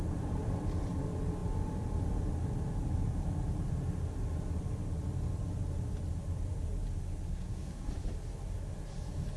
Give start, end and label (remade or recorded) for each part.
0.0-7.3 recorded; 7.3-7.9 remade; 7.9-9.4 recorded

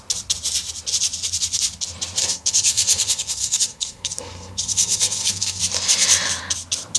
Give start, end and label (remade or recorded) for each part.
0.0-2.2 recorded; 2.2-5.6 remade; 5.6-7.0 recorded

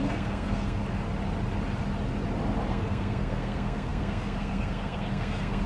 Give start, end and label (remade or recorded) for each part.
0.0-0.8 remade; 0.8-2.7 recorded; 2.7-5.7 remade

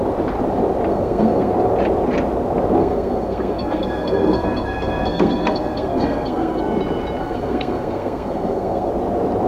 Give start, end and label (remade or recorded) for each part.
0.0-0.9 recorded; 0.9-1.5 remade; 1.5-2.8 recorded; 2.8-6.6 remade; 6.6-7.2 recorded; 7.2-8.9 remade; 8.9-9.5 recorded